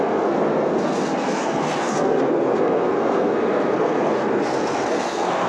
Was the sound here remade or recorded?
remade